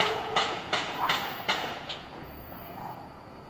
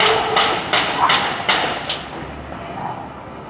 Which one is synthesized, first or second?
first